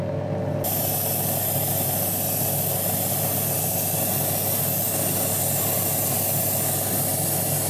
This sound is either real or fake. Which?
real